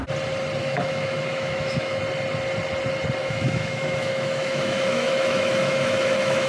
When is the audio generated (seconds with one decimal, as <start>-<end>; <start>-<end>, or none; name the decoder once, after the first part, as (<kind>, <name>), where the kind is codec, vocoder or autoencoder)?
0.6-2.0 (autoencoder, DAC-VAE); 3.2-6.5